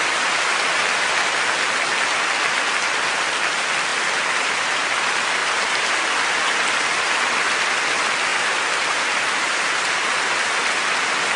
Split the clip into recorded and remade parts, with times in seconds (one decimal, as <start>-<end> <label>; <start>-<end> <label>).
0.0-5.4 recorded; 5.4-6.0 remade; 6.0-8.3 recorded; 8.3-10.2 remade; 10.2-11.4 recorded